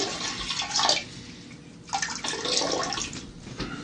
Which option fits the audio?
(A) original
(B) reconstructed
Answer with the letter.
A